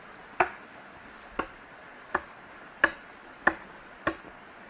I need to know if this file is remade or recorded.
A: recorded